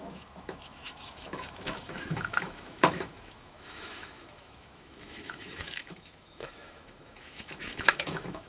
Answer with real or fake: fake